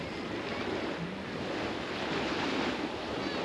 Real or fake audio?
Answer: real